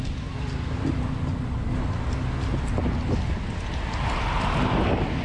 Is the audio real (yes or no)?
yes